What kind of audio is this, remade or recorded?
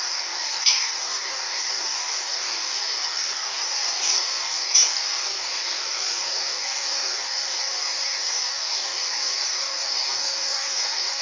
remade